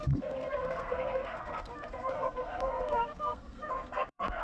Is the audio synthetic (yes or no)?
yes